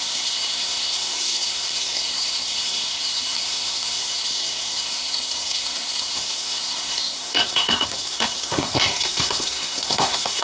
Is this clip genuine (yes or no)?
no